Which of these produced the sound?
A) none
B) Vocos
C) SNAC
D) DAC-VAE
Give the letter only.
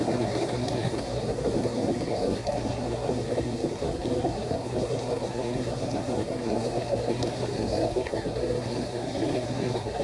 C